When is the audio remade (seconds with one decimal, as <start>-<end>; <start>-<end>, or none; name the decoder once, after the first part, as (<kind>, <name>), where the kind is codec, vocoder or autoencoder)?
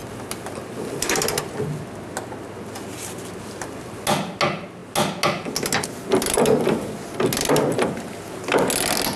none